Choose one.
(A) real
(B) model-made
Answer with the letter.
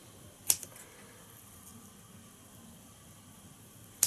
A